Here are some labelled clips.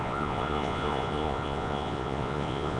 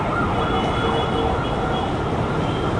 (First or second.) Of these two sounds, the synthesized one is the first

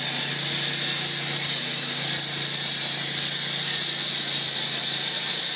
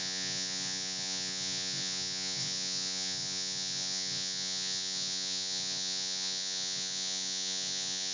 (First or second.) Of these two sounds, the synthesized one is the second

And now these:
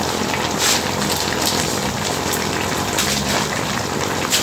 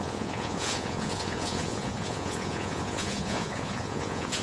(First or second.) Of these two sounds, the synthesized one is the second